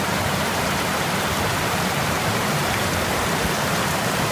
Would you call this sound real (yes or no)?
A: no